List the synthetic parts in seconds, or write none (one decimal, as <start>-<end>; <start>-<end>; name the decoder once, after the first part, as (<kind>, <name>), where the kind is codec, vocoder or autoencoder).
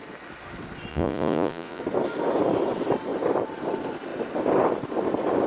0.9-1.8 (vocoder, Vocos)